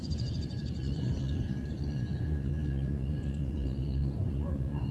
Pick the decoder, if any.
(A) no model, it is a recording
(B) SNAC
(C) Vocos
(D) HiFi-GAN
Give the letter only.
C